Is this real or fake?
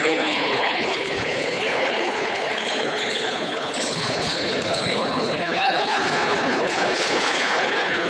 fake